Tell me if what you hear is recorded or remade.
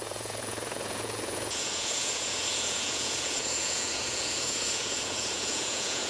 remade